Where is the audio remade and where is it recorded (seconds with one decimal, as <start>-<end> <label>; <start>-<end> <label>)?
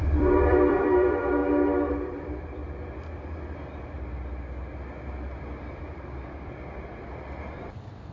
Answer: 0.0-1.4 remade; 1.4-1.9 recorded; 1.9-2.6 remade; 2.6-5.8 recorded; 5.8-8.1 remade